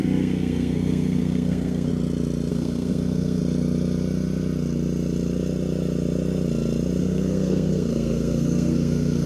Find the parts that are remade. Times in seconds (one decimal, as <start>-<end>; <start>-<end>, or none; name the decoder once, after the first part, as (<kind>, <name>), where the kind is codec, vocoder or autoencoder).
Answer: 0.0-1.9 (codec, SNAC); 2.5-3.4; 7.0-9.3